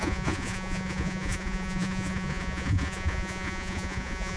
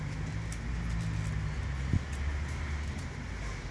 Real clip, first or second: second